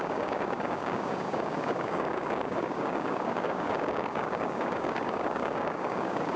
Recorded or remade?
remade